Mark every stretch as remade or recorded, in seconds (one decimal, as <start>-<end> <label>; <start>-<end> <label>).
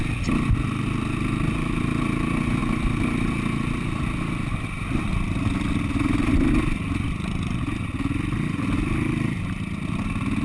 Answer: 0.0-10.4 recorded